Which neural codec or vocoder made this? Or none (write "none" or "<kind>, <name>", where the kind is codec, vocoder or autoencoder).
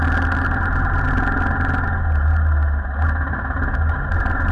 none